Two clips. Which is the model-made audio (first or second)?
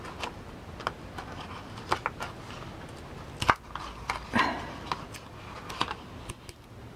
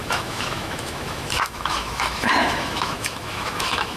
second